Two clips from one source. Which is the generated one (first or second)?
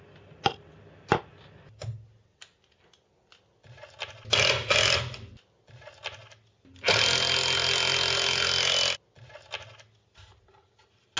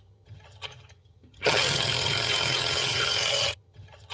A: second